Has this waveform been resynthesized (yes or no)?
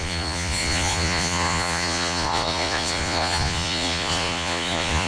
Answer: yes